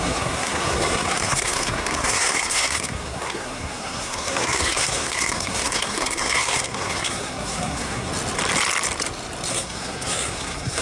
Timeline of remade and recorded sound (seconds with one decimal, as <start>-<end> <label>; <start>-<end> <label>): 0.0-8.1 remade; 8.1-9.5 recorded; 9.5-10.8 remade